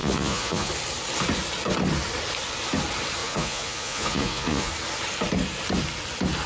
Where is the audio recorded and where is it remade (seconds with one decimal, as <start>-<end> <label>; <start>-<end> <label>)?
0.0-0.7 remade; 0.7-3.2 recorded; 3.2-4.7 remade; 4.7-6.5 recorded